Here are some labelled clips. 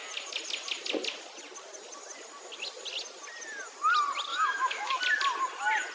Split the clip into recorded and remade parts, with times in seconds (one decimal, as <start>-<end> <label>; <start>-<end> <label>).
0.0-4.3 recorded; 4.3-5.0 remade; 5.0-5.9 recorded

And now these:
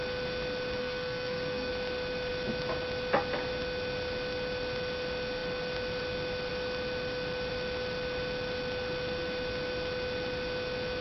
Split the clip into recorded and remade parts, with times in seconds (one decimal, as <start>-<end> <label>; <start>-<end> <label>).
0.0-0.8 recorded; 0.8-1.7 remade; 1.7-11.0 recorded

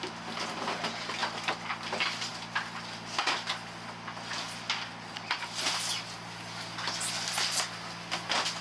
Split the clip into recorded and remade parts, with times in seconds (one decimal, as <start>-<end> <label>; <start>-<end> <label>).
0.0-8.6 recorded